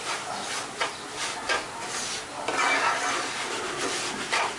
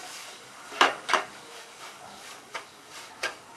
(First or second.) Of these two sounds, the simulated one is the second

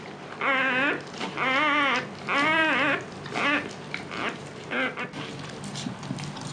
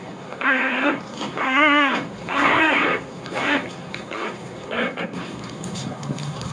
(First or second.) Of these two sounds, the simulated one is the second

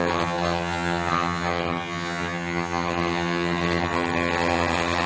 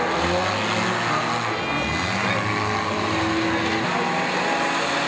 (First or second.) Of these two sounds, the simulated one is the first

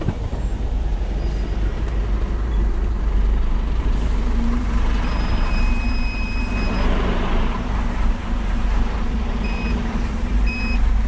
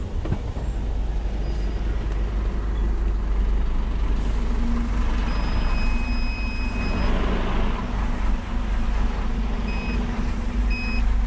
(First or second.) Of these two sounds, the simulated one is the first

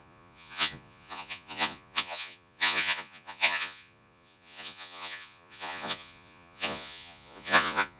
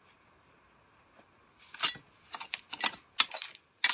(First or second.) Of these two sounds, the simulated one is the first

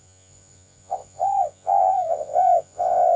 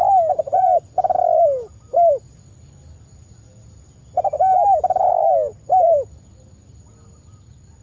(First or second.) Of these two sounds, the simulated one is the first